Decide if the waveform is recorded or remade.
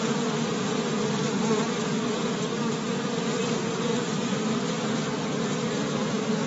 recorded